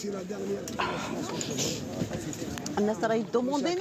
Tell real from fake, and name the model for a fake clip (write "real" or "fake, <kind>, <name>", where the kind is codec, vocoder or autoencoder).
real